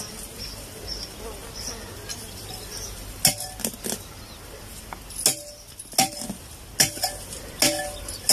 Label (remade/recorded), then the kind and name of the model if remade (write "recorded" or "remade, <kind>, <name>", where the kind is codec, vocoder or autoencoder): recorded